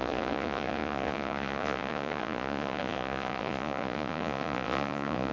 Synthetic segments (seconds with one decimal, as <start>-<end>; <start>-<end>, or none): 0.0-5.3